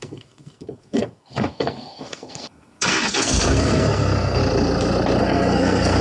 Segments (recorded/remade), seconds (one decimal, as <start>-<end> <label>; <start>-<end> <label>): 0.0-4.4 remade; 4.4-5.2 recorded; 5.2-6.0 remade

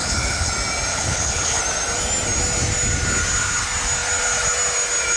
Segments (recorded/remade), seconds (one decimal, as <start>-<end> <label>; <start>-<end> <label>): 0.0-0.5 remade; 0.5-0.9 recorded; 0.9-1.6 remade; 1.6-5.2 recorded